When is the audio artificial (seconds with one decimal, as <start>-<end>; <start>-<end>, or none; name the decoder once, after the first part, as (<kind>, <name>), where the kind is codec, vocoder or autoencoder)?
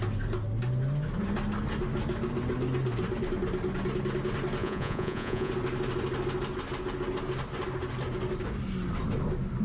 4.6-5.5 (vocoder, Vocos)